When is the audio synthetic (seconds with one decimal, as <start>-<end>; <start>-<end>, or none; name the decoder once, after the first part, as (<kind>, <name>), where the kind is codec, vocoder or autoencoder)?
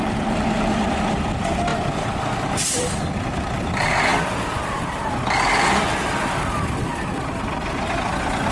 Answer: none